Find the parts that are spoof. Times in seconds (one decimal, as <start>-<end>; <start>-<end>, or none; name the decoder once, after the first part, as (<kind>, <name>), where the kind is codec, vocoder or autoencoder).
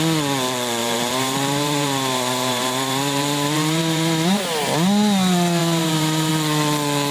0.8-4.4 (vocoder, BigVGAN v2); 5.6-6.3